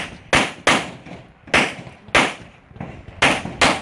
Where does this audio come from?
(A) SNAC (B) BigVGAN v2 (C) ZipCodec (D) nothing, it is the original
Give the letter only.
D